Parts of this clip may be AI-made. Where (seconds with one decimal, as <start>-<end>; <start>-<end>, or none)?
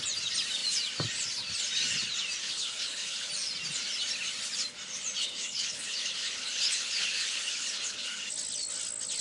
2.4-3.3; 5.2-8.2